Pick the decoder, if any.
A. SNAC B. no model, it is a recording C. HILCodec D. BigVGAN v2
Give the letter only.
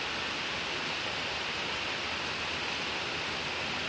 B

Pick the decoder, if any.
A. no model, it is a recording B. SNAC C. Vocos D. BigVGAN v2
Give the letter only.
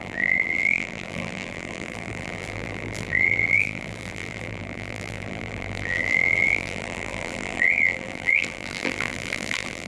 D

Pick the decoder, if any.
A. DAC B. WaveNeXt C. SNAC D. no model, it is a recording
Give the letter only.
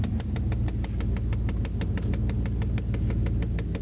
D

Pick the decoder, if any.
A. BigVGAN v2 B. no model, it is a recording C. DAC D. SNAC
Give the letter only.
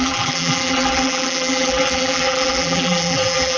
A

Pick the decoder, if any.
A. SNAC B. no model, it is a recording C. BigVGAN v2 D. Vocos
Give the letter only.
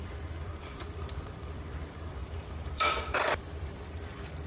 C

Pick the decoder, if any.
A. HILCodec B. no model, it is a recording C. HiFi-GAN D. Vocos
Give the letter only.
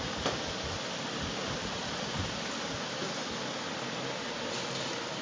B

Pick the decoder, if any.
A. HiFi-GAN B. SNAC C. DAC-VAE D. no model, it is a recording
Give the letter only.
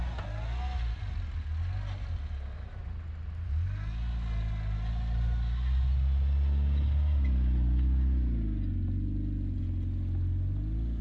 D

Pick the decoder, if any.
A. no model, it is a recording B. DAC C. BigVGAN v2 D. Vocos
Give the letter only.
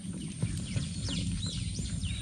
C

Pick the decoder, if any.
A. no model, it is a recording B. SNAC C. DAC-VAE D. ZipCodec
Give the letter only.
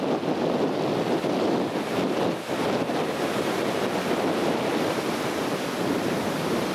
A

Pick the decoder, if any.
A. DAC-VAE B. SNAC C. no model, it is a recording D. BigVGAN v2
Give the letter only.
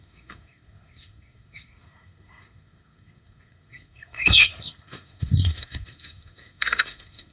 B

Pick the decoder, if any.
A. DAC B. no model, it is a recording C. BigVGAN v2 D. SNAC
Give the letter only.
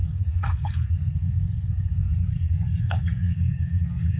D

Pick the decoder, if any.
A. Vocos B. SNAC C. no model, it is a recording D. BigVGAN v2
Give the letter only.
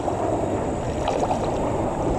C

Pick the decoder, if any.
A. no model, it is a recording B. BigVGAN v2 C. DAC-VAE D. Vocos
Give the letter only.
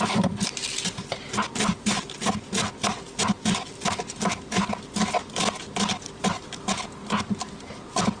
A